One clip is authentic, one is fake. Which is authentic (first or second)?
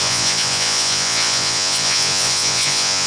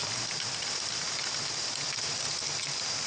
second